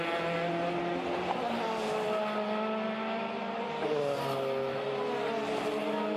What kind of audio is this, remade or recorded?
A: recorded